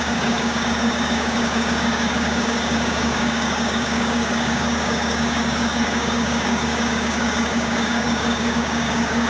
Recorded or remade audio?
remade